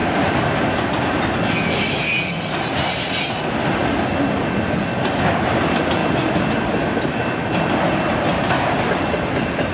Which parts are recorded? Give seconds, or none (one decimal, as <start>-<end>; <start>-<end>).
0.0-9.7